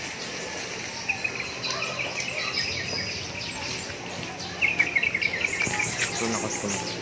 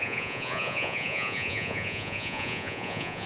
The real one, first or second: first